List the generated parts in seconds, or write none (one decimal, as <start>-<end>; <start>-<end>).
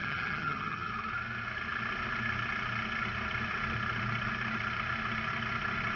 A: 0.0-0.9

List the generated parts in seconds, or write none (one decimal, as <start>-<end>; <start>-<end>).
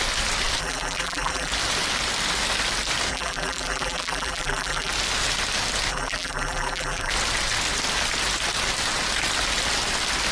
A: 0.6-1.5; 3.1-4.9; 5.9-7.1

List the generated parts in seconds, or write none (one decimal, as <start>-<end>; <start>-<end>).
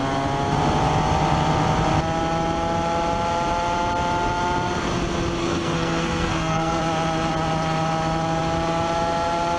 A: 5.4-6.8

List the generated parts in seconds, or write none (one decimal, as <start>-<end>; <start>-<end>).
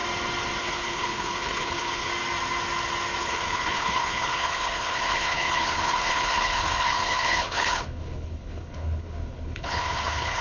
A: 0.6-2.1; 3.2-10.4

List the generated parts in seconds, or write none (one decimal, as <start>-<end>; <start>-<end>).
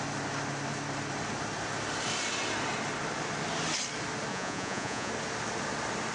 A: 4.3-5.1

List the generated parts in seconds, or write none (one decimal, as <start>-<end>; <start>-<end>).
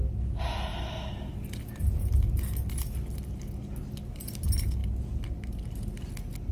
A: none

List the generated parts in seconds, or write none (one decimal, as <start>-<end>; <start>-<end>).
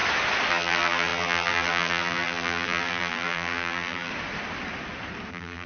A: 0.5-4.1; 5.3-5.7